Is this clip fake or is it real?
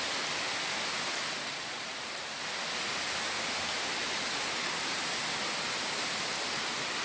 real